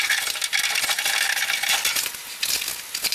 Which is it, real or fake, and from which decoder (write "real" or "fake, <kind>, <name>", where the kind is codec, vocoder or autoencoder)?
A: real